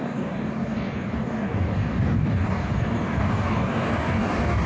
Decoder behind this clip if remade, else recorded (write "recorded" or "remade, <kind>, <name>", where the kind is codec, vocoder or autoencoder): remade, codec, DAC